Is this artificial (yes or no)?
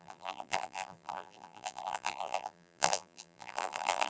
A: yes